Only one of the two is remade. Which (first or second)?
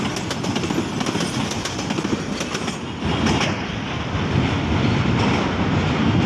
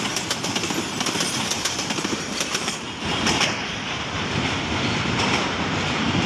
second